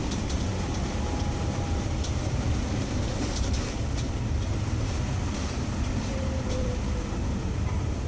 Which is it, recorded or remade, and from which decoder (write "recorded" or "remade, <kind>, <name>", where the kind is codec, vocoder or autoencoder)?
remade, vocoder, BigVGAN v2